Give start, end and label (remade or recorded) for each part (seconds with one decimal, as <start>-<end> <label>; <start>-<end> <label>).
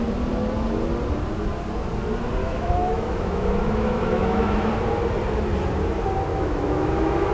0.0-2.4 recorded; 2.4-4.7 remade; 4.7-6.3 recorded; 6.3-7.3 remade